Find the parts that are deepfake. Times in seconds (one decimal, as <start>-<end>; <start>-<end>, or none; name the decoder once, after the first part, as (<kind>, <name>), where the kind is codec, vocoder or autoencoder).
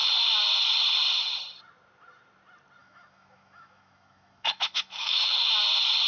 2.8-5.5 (autoencoder, DAC-VAE)